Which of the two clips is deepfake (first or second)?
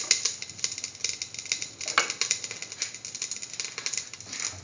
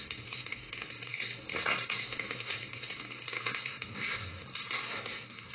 second